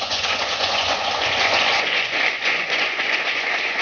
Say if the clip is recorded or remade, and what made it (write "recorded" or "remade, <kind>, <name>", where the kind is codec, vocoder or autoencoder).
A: remade, vocoder, Vocos